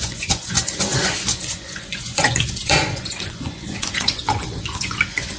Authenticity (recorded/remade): remade